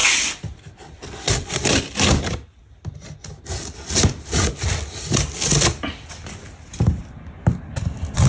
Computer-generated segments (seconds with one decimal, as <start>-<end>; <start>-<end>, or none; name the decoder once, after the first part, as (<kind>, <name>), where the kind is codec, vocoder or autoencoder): 0.0-1.8 (vocoder, BigVGAN v2)